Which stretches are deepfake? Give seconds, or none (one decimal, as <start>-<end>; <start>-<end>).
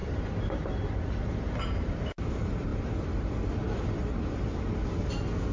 none